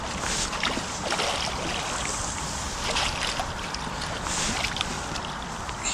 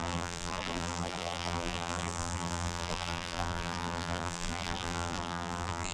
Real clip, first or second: first